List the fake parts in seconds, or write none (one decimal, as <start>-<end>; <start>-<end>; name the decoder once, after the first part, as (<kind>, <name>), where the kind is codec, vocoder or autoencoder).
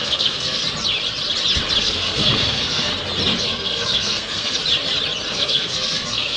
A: 0.0-0.6 (codec, SNAC); 1.8-2.9; 3.4-4.6; 5.3-6.4